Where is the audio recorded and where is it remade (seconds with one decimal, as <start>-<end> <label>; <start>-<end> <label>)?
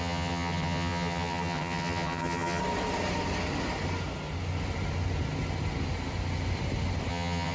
0.0-2.6 remade; 2.6-7.1 recorded; 7.1-7.5 remade